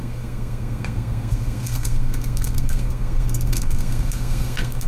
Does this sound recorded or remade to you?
remade